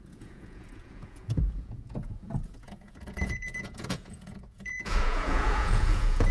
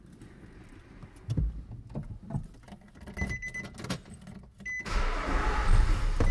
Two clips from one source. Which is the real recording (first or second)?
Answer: second